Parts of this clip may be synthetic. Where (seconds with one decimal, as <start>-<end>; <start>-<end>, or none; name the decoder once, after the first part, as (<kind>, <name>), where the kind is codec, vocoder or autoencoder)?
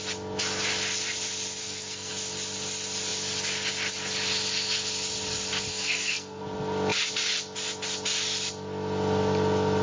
1.6-2.1 (codec, SNAC); 5.7-6.4